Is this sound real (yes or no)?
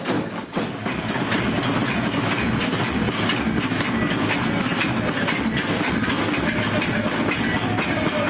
yes